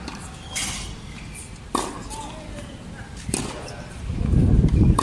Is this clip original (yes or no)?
yes